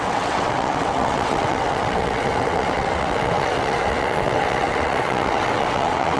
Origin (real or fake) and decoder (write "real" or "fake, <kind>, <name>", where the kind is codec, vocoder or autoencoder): fake, vocoder, WaveNeXt